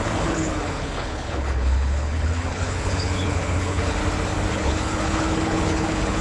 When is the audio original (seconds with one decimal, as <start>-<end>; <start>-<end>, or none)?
4.0-4.5